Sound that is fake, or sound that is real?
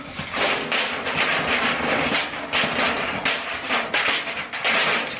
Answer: real